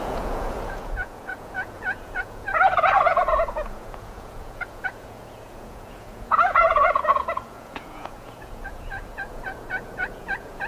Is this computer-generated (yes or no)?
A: yes